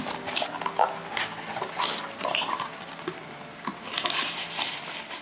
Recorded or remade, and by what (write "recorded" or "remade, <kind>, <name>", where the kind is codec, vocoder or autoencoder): recorded